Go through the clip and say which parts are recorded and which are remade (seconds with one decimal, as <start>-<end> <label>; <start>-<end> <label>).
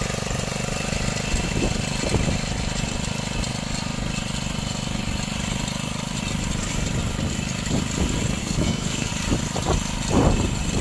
0.0-8.4 recorded; 8.4-9.1 remade; 9.1-10.8 recorded